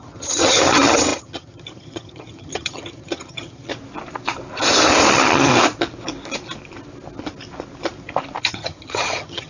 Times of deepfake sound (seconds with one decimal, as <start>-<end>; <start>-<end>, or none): 0.0-3.7; 5.1-5.5; 8.4-9.5